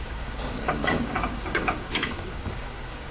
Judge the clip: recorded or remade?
remade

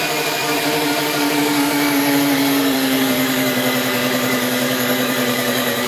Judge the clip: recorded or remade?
remade